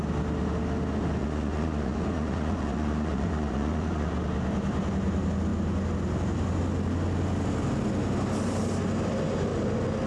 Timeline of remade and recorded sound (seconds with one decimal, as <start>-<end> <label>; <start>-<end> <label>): 0.0-1.2 recorded; 1.2-4.1 remade; 4.1-10.1 recorded